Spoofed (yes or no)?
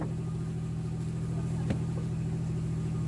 no